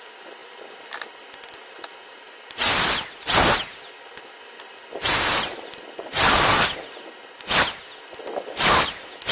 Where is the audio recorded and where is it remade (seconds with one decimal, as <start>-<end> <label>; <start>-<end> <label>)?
0.0-9.3 recorded